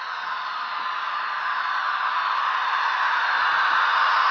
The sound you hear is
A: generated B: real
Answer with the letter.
B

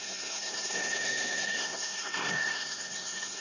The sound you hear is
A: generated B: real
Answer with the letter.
A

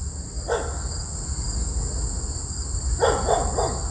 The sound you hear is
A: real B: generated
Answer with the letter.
A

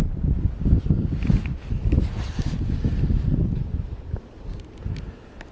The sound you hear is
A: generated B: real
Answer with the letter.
B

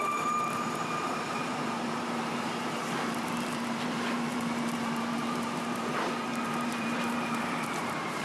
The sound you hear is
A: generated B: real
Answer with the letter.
A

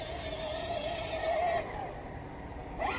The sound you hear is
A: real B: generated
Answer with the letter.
A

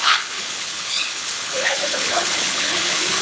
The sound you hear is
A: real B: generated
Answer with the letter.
B